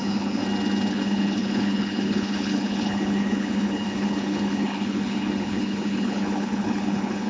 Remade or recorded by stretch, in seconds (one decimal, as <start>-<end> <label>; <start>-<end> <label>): 0.0-0.4 remade; 0.4-0.9 recorded; 0.9-7.3 remade